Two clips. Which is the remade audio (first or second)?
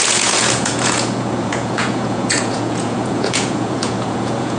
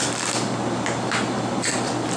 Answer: first